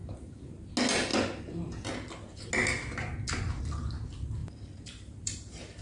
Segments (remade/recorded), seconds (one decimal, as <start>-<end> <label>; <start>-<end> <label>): 0.0-0.7 remade; 0.7-4.4 recorded; 4.4-5.8 remade